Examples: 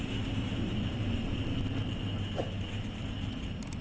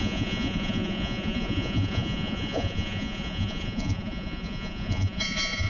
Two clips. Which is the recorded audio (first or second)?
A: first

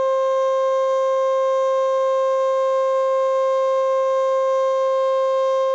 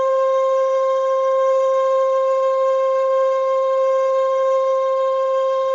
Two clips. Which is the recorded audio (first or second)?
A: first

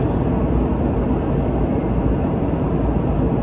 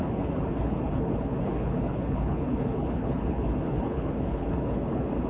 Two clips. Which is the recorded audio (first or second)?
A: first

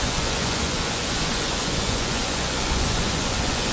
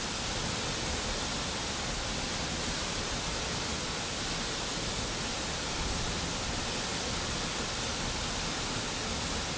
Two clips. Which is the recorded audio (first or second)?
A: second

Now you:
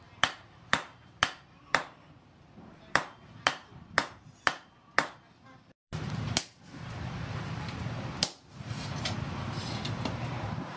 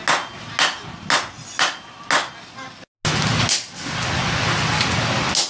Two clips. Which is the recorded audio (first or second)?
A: second